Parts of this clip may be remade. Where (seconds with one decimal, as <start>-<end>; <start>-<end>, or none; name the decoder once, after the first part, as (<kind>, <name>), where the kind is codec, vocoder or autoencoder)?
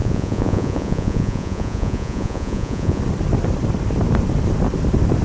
0.0-3.0 (vocoder, Vocos)